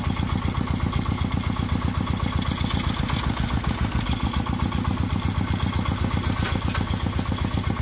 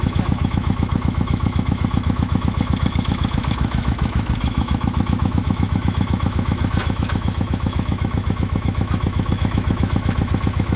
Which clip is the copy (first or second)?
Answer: second